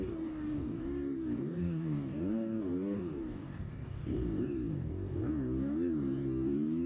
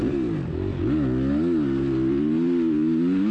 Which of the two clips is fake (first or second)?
first